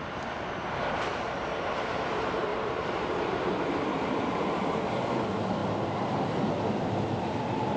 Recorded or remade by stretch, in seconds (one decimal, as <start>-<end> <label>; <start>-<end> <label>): 0.0-1.5 recorded; 1.5-2.0 remade; 2.0-2.5 recorded; 2.5-3.4 remade; 3.4-3.9 recorded; 3.9-4.6 remade; 4.6-7.8 recorded